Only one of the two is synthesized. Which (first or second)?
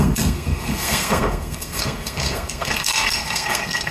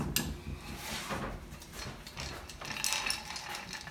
first